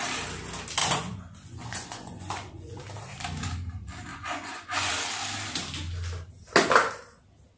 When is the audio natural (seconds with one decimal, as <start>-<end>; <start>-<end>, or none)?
0.0-0.8; 2.8-4.1; 4.9-7.6

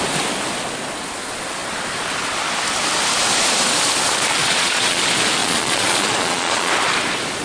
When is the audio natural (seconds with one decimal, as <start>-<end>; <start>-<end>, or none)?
0.0-4.4; 5.0-5.4; 6.7-7.4

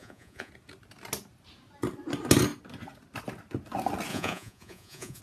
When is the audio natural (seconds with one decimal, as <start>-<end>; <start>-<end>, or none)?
0.5-4.1

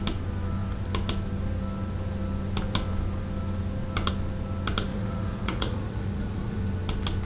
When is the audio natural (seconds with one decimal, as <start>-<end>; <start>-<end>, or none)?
0.0-4.9; 6.6-7.2

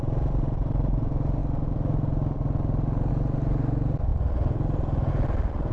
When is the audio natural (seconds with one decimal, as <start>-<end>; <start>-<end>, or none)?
0.0-5.7